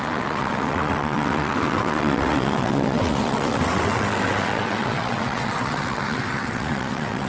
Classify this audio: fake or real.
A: fake